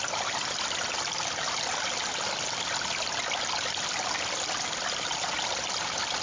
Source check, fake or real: real